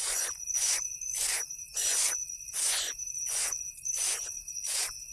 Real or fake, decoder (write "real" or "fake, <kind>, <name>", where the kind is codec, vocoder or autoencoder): fake, vocoder, Vocos